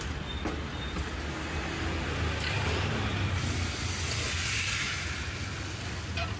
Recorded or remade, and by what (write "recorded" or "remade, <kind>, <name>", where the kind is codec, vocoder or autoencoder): recorded